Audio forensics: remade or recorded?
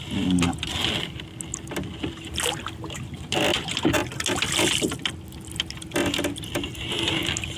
recorded